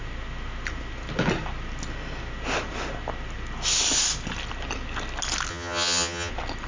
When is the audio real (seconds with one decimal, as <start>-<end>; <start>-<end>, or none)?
0.0-5.5; 6.3-6.7